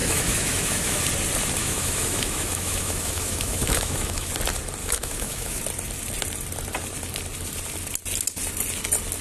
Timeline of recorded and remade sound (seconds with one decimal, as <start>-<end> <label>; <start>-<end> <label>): 0.0-1.0 remade; 1.0-1.6 recorded; 1.6-4.3 remade; 4.3-4.8 recorded; 4.8-5.6 remade; 5.6-9.2 recorded

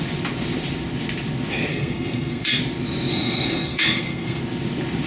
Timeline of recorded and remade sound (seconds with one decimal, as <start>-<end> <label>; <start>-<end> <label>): 0.0-1.7 recorded; 1.7-2.6 remade; 2.6-3.1 recorded; 3.1-4.4 remade; 4.4-5.1 recorded

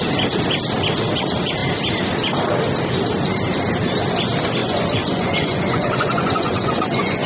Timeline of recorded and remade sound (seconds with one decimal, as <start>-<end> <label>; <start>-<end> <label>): 0.0-4.6 recorded; 4.6-7.3 remade

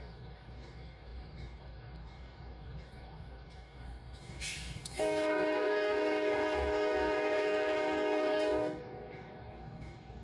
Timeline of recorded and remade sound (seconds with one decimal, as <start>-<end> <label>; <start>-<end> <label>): 0.0-10.2 remade

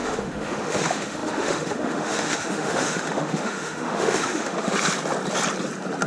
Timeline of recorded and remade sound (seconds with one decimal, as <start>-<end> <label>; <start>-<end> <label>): 0.0-4.7 remade; 4.7-6.1 recorded

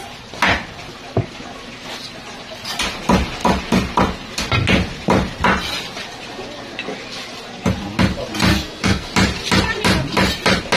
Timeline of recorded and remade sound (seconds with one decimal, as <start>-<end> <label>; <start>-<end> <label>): 0.0-8.5 recorded; 8.5-9.1 remade; 9.1-10.8 recorded

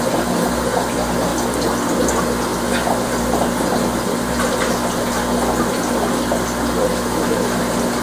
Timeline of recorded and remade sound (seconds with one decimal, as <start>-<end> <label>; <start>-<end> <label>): 0.0-6.9 recorded; 6.9-7.6 remade; 7.6-8.0 recorded